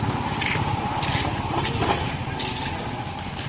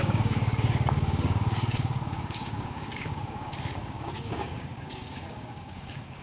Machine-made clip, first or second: second